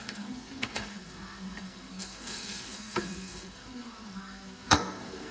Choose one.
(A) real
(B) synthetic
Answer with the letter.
B